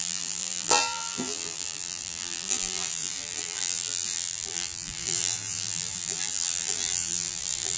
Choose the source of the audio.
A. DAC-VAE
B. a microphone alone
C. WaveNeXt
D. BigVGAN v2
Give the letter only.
D